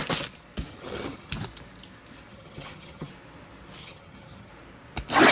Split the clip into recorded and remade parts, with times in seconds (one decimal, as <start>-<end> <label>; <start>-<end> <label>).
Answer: 0.0-0.7 recorded; 0.7-1.3 remade; 1.3-2.3 recorded; 2.3-3.1 remade; 3.1-3.8 recorded; 3.8-4.5 remade; 4.5-5.3 recorded